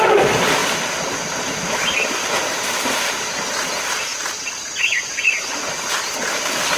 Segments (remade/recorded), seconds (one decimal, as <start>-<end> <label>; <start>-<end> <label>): 0.0-6.8 recorded